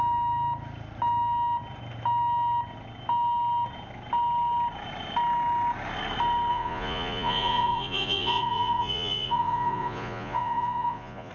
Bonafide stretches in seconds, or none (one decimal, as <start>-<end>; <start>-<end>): 0.0-6.5

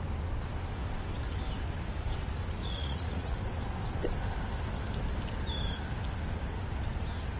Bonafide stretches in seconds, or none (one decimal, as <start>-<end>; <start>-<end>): 0.0-2.6; 3.4-7.4

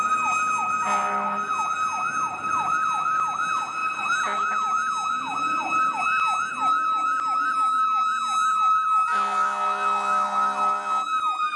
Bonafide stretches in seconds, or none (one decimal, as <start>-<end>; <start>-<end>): 0.0-11.6

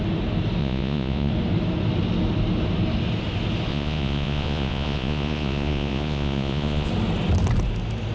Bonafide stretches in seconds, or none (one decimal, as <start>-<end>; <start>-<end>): 0.0-0.6; 1.3-3.7; 6.9-8.1

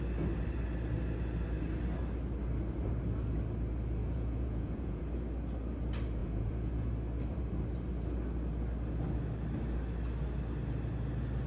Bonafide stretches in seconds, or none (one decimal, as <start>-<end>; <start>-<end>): 0.0-4.0; 5.0-6.2; 6.9-11.5

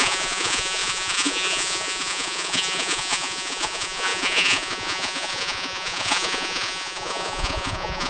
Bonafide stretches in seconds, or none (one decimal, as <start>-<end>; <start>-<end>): none

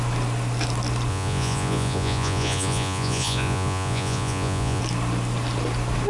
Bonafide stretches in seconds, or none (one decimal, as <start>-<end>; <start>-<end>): 0.0-1.1; 4.8-6.1

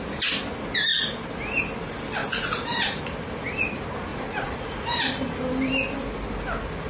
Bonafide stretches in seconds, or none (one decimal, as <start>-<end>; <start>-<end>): 0.0-2.2; 3.0-4.1; 5.2-6.9